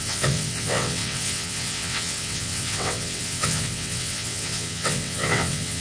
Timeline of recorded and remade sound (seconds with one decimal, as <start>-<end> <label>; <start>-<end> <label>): 0.0-5.8 remade